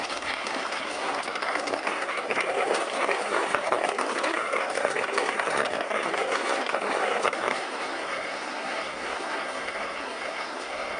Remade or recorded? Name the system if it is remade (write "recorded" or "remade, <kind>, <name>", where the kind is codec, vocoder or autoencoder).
remade, codec, SNAC